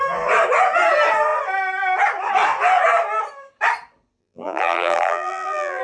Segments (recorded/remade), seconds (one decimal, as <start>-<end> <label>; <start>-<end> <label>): 0.0-4.2 recorded; 4.2-5.8 remade